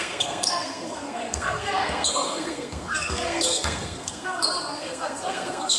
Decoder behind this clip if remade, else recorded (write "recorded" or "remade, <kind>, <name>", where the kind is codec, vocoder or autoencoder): remade, codec, SNAC